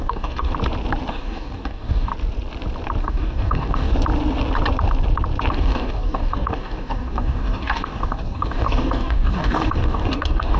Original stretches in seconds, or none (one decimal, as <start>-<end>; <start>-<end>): 0.5-1.1; 2.1-3.0; 3.9-5.5